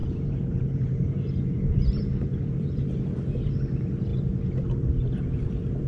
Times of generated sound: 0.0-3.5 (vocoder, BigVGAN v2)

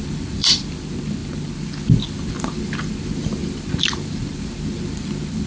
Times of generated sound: 0.0-5.5 (vocoder, BigVGAN v2)

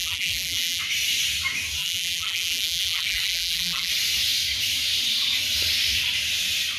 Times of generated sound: 0.0-0.8 (vocoder, BigVGAN v2); 1.8-3.9